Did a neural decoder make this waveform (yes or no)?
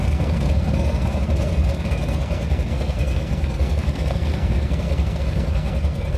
yes